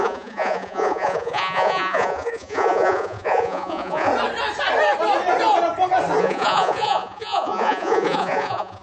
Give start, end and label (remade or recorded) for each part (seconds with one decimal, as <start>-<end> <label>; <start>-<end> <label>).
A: 0.0-4.1 remade; 4.1-6.2 recorded; 6.2-8.8 remade